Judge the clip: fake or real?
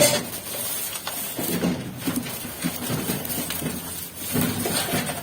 real